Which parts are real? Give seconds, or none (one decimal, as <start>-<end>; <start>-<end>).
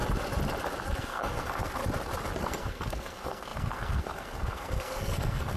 0.0-1.0; 1.8-2.4